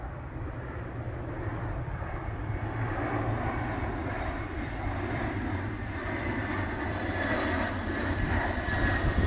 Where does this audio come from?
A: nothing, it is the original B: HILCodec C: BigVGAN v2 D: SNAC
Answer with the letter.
C